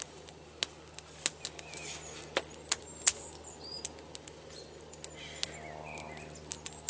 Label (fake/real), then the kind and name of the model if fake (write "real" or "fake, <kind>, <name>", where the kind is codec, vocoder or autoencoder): real